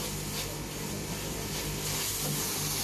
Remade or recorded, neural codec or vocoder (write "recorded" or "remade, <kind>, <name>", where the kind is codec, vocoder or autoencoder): recorded